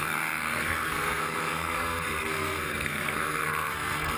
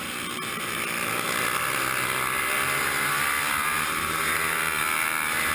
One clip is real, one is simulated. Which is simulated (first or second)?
first